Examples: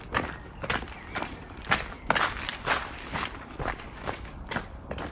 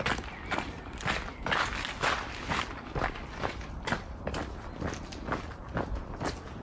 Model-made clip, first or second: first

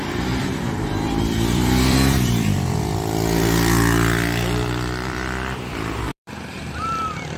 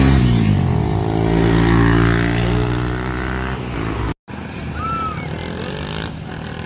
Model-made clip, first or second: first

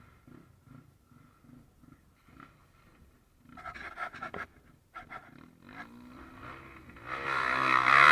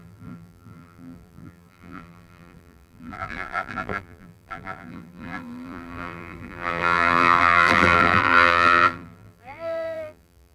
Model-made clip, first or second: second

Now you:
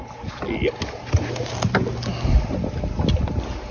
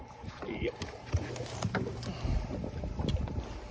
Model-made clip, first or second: second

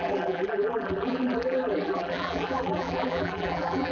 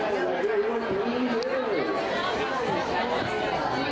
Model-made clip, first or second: first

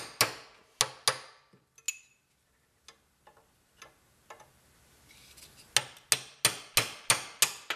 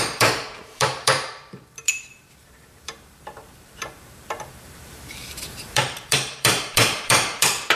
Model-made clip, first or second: second